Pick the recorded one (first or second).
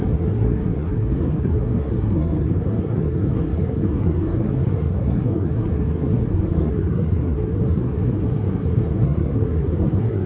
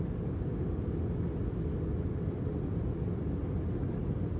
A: second